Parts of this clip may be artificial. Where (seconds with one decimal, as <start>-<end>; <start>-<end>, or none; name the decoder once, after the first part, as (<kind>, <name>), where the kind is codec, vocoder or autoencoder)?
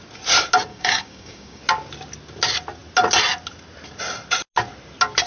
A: 0.7-1.6 (codec, DAC)